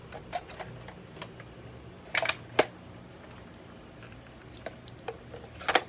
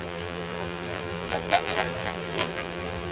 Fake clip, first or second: second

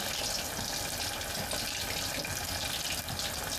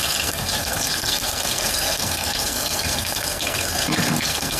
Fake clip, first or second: second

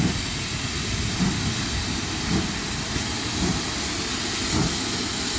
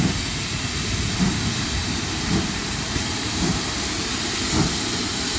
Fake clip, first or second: second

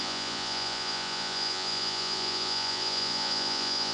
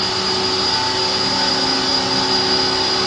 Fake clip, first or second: first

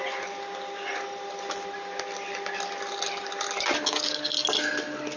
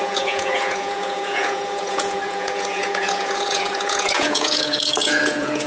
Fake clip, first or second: second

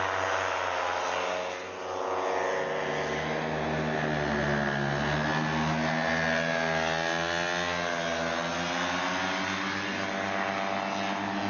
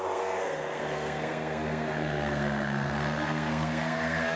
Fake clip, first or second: second